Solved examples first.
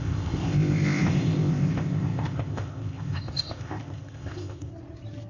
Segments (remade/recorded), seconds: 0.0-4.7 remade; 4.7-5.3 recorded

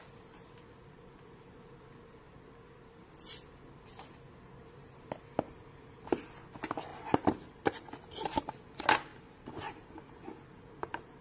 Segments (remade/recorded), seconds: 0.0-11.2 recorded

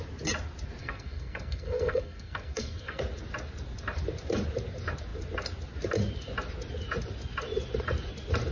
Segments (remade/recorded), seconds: 0.0-0.8 recorded; 0.8-3.0 remade; 3.0-8.5 recorded